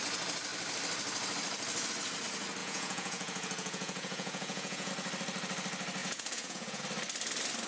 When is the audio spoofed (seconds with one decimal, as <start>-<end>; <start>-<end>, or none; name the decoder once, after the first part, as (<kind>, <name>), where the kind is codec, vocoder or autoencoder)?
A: 2.6-4.9 (vocoder, Vocos); 6.0-6.8